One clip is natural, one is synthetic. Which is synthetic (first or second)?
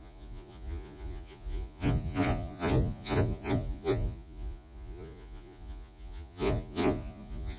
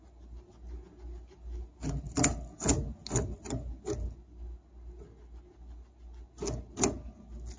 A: first